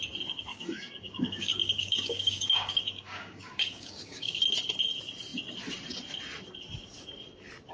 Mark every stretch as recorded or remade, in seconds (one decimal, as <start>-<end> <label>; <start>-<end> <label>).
0.0-0.5 recorded; 0.5-4.4 remade; 4.4-7.7 recorded